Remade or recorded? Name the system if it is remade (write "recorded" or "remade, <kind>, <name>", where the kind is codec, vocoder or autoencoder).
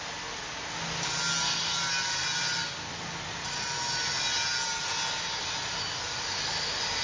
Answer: recorded